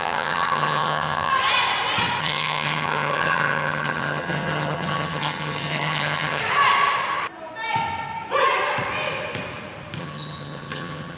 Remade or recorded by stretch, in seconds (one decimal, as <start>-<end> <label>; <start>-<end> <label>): 0.0-1.3 remade; 1.3-2.2 recorded; 2.2-6.4 remade; 6.4-10.0 recorded; 10.0-11.2 remade

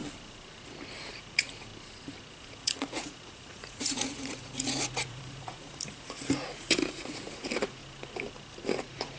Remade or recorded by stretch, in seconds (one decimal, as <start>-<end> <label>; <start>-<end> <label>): 0.0-1.1 recorded; 1.1-1.7 remade; 1.7-2.5 recorded; 2.5-7.8 remade; 7.8-8.7 recorded; 8.7-9.2 remade

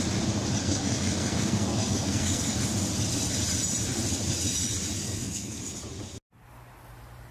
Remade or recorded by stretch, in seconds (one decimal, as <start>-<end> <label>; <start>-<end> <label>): 0.0-0.6 recorded; 0.6-2.6 remade; 2.6-5.0 recorded; 5.0-5.6 remade; 5.6-7.3 recorded

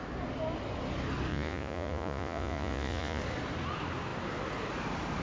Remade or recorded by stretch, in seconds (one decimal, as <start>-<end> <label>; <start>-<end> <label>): 0.0-1.3 recorded; 1.3-3.2 remade; 3.2-5.2 recorded

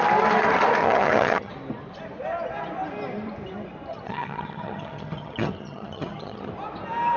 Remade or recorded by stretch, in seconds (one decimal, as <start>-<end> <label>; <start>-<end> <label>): 0.0-0.8 recorded; 0.8-1.5 remade; 1.5-3.9 recorded; 3.9-6.5 remade; 6.5-7.2 recorded

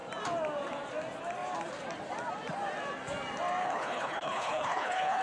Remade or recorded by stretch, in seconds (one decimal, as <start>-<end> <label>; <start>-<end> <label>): 0.0-3.6 recorded; 3.6-5.2 remade

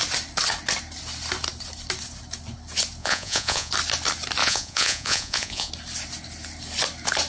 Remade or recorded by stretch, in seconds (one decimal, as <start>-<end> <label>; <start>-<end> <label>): 0.0-3.0 recorded; 3.0-3.7 remade; 3.7-4.4 recorded; 4.4-5.7 remade; 5.7-7.3 recorded

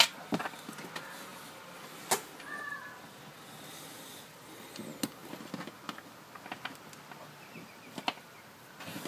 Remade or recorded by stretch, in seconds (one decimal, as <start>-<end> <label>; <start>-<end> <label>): 0.0-9.1 recorded